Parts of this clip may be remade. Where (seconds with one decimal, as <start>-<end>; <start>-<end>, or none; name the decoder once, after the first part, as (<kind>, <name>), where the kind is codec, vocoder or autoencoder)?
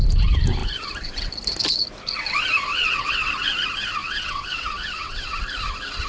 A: 2.7-3.3 (vocoder, WaveNeXt); 4.0-5.4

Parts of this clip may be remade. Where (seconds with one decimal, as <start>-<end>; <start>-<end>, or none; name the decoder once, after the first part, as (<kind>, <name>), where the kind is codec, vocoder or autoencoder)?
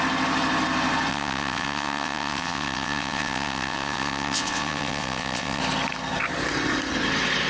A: 1.1-5.6 (vocoder, WaveNeXt)